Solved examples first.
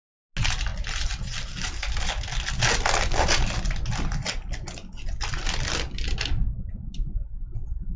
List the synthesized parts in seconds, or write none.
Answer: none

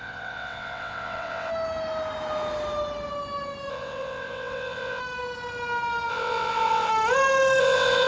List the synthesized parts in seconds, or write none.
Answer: 0.0-1.5 (vocoder, WaveNeXt); 3.7-5.0; 6.1-6.9; 7.6-8.1

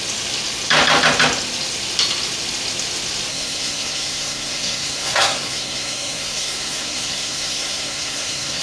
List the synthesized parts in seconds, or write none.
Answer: 3.3-8.6 (codec, SNAC)

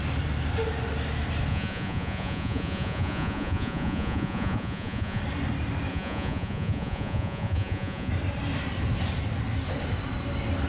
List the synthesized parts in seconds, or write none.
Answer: 1.5-5.2 (vocoder, Vocos); 5.9-8.1